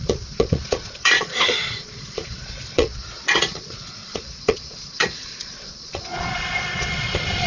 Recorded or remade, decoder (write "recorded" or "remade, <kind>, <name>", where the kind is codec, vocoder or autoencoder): remade, vocoder, Vocos